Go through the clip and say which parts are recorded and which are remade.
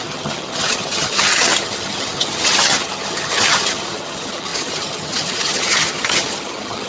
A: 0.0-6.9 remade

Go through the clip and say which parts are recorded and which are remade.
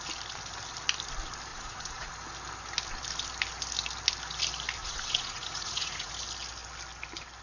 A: 0.0-1.5 recorded; 1.5-2.1 remade; 2.1-4.8 recorded; 4.8-6.1 remade; 6.1-7.4 recorded